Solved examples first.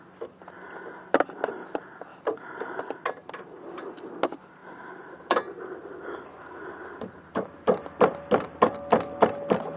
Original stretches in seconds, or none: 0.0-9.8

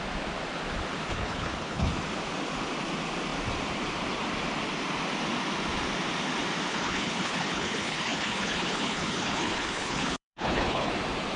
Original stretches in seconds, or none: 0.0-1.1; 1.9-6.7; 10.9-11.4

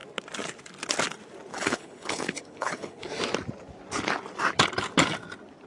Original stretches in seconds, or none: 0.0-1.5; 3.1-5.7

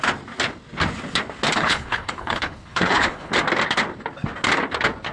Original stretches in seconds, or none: 0.0-1.6; 3.3-5.1

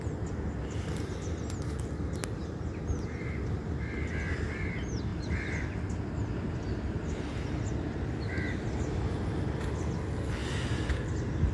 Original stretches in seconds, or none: 0.0-11.5